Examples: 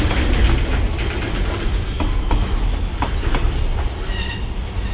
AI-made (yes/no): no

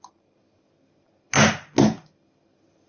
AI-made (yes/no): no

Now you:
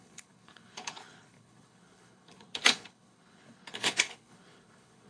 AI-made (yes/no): yes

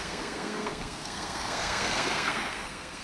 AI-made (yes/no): yes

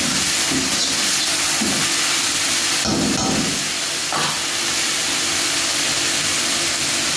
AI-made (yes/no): no